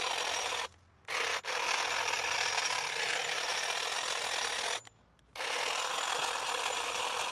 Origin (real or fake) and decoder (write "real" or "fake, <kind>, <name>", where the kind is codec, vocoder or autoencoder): real